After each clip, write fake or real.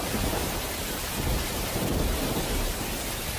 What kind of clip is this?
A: fake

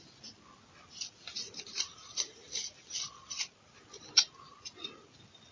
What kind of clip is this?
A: real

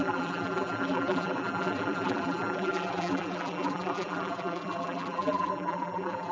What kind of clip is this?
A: fake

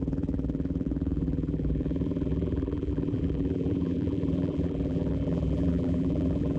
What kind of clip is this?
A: fake